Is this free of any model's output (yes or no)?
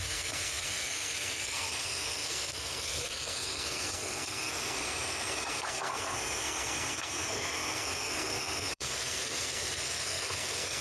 no